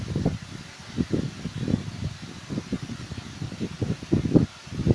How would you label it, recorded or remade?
recorded